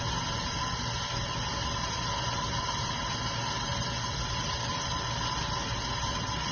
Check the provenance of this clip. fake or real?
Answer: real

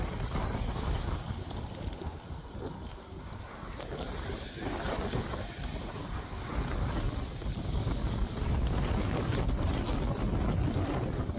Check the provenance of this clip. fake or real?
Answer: real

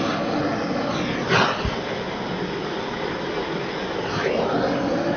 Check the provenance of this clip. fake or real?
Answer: real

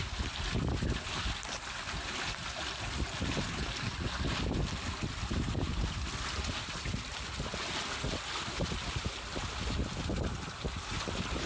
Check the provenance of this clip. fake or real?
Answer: real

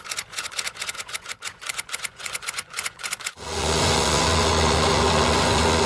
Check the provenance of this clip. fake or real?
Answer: fake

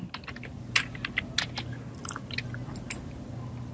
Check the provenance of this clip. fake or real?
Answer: real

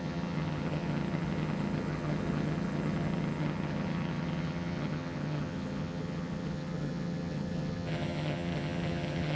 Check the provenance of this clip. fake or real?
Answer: fake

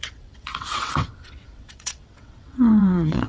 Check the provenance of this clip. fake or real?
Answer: fake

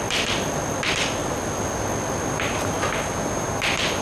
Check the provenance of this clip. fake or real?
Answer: real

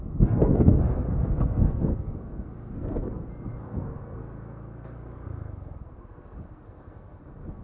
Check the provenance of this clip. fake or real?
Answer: fake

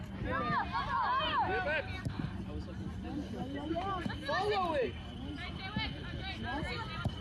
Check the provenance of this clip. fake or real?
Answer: real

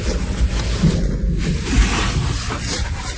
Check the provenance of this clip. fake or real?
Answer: real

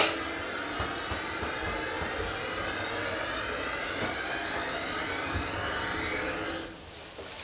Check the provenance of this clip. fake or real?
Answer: real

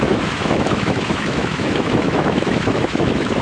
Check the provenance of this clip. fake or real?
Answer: fake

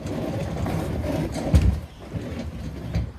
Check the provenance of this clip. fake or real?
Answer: fake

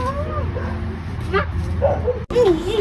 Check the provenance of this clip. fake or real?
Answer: real